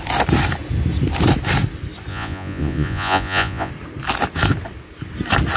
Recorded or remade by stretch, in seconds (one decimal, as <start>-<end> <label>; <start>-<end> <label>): 0.0-2.1 recorded; 2.1-3.7 remade; 3.7-5.6 recorded